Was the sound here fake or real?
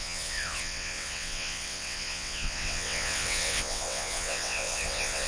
fake